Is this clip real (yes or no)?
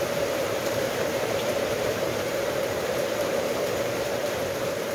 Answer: no